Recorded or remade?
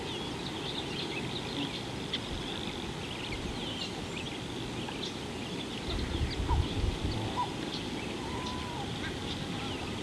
recorded